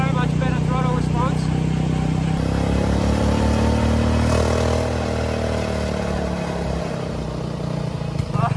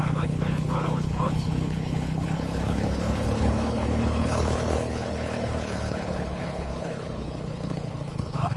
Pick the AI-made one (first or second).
second